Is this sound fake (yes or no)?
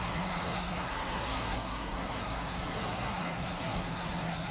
yes